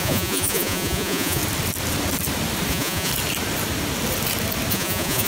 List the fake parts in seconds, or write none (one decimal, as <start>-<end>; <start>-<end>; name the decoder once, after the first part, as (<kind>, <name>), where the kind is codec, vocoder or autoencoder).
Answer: 0.0-1.4 (vocoder, Vocos); 2.7-3.1; 4.7-5.3